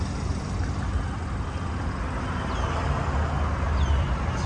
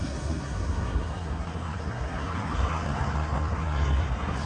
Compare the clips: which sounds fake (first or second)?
second